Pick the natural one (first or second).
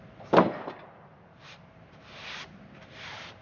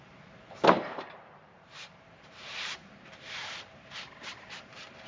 first